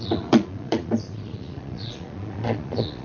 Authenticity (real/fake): fake